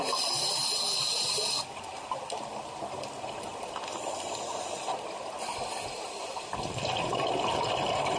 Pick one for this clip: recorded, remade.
recorded